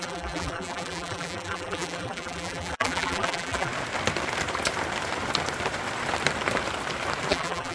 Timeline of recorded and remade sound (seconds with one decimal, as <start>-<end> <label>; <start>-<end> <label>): 0.0-3.7 remade; 3.7-7.3 recorded; 7.3-7.7 remade

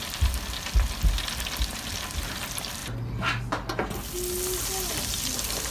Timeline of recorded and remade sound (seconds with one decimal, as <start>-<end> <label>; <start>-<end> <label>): 0.0-5.7 recorded

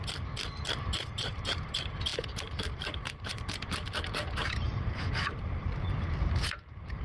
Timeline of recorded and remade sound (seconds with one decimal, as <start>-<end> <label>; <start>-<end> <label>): 0.0-1.1 recorded; 1.1-7.0 remade

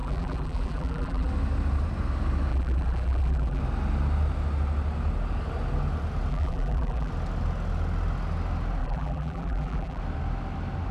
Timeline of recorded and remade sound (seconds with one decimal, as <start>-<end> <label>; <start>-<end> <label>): 0.0-1.3 remade; 1.3-2.5 recorded; 2.5-3.6 remade; 3.6-6.3 recorded; 6.3-7.1 remade; 7.1-8.8 recorded; 8.8-10.0 remade; 10.0-10.9 recorded

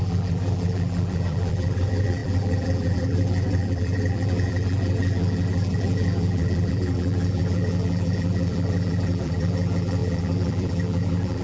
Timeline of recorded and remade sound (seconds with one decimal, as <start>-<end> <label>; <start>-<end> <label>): 0.0-11.4 remade

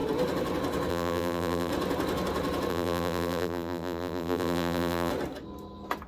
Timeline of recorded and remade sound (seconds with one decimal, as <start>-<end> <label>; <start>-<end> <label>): 0.0-0.9 recorded; 0.9-1.7 remade; 1.7-2.7 recorded; 2.7-5.1 remade; 5.1-6.1 recorded

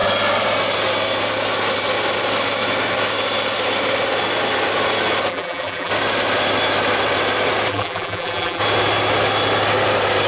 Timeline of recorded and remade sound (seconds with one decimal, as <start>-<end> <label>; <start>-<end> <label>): 0.0-5.3 recorded; 5.3-5.9 remade; 5.9-7.7 recorded; 7.7-8.6 remade; 8.6-10.3 recorded